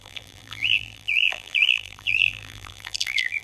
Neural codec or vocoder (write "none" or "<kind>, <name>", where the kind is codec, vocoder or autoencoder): vocoder, BigVGAN v2